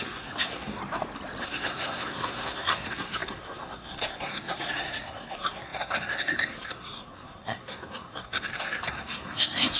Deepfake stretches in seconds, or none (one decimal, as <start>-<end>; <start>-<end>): 0.0-0.8; 1.4-9.8